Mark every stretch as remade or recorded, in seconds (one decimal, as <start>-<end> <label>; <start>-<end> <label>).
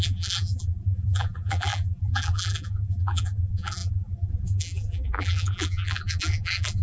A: 0.0-6.8 remade